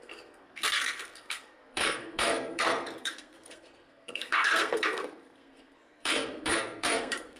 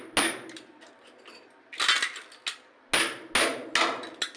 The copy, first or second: first